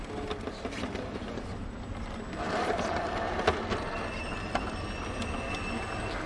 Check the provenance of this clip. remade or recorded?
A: recorded